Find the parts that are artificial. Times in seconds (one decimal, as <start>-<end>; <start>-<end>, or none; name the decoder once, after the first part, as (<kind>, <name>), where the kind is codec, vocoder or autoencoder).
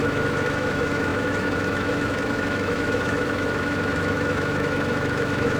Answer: 0.0-5.6 (autoencoder, DAC-VAE)